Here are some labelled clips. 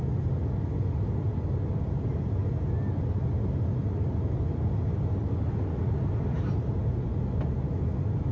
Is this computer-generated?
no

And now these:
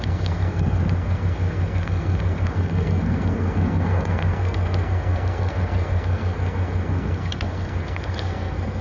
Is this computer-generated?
yes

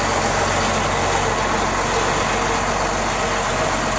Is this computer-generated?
no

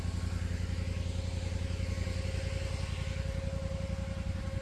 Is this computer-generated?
no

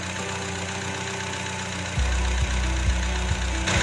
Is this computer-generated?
no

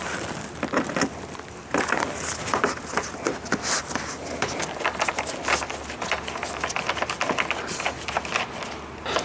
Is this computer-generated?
no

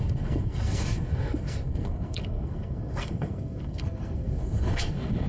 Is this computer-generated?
yes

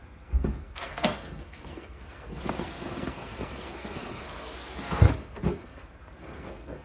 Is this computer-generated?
yes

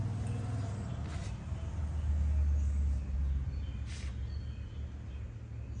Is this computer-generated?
no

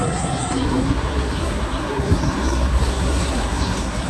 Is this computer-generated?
yes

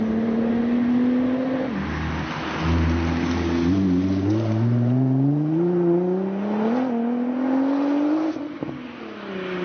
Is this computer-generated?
no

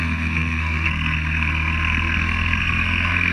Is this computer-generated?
yes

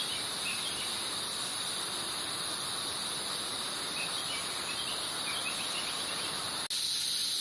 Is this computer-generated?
no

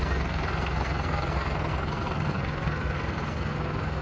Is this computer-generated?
yes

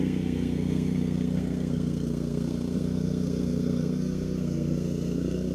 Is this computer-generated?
yes